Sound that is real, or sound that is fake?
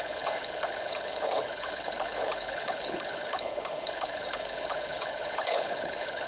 fake